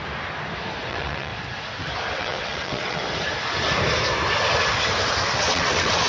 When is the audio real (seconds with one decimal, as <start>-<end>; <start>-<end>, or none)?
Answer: 0.0-0.9; 1.3-2.1; 3.0-5.3